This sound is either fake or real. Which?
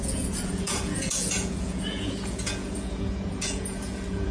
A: fake